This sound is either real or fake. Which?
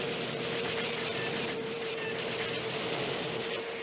fake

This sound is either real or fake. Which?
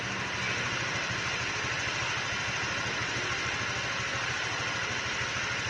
real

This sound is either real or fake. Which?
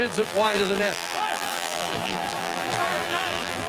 fake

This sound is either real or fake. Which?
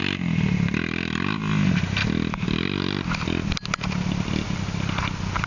real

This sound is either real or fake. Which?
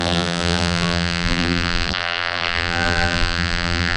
fake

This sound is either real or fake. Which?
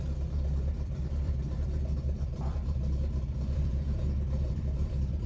fake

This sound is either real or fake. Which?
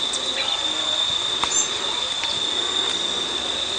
real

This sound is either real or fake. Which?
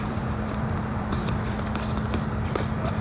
fake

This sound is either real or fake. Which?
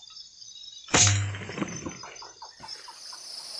fake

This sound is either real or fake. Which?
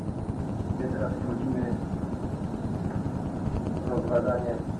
real